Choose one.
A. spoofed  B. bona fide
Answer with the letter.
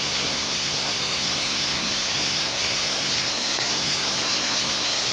A